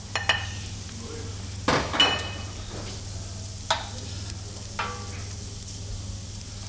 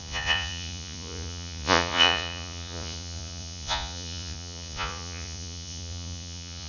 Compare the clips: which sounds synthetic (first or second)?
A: second